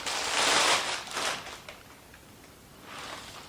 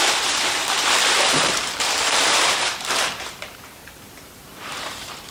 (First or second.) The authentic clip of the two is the first